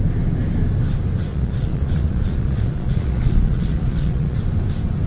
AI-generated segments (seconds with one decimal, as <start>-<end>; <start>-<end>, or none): 1.3-4.4